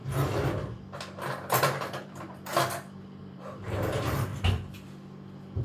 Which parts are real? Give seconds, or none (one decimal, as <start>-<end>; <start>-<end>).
0.0-1.4; 2.5-3.2; 4.3-5.6